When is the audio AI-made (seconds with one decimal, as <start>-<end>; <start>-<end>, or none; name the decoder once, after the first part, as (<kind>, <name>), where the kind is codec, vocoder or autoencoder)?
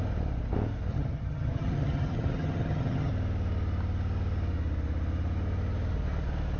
0.9-3.1 (vocoder, HiFi-GAN)